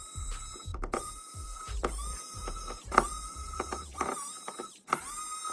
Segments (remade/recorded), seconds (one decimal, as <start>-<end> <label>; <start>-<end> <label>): 0.0-0.7 recorded; 0.7-4.0 remade; 4.0-5.5 recorded